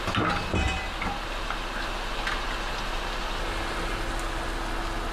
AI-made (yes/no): no